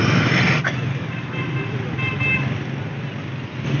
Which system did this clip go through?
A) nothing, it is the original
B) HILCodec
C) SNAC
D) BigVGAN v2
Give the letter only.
A